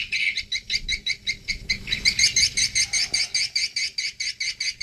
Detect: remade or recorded recorded